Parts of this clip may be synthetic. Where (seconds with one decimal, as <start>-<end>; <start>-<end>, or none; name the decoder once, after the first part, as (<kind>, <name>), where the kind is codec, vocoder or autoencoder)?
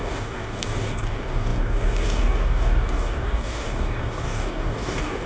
0.0-5.3 (codec, DAC)